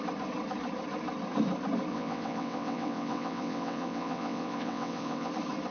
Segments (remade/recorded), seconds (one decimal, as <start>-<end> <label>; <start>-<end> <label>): 0.0-1.9 recorded; 1.9-5.3 remade; 5.3-5.7 recorded